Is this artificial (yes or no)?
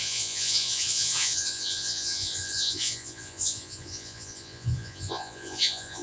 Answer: yes